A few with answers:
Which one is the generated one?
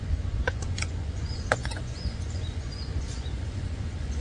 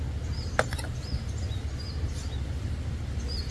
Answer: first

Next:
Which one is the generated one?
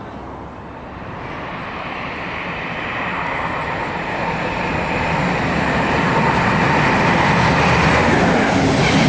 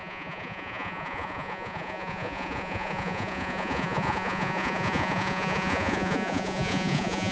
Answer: second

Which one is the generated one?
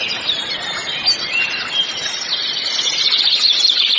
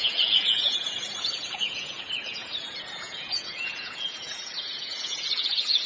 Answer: second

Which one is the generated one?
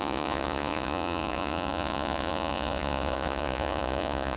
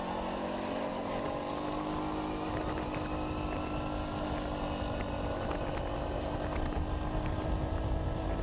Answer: first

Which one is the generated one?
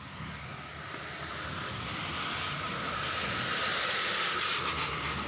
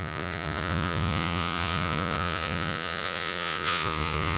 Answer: second